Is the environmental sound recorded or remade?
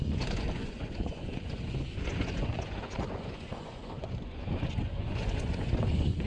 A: remade